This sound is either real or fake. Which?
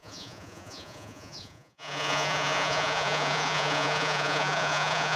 fake